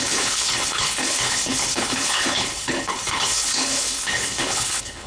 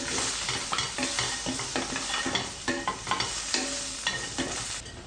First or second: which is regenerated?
first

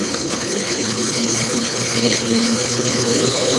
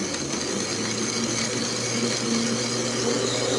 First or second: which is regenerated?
first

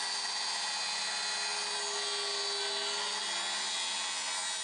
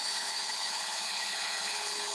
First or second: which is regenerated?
second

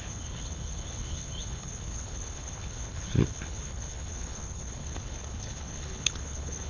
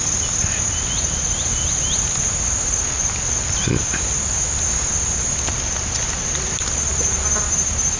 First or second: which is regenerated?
first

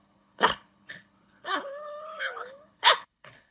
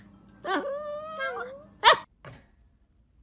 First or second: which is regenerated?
first